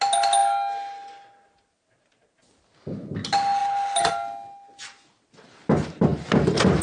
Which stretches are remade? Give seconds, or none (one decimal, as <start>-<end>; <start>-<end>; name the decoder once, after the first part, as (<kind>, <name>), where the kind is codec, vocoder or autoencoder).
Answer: 3.6-4.1 (vocoder, BigVGAN v2)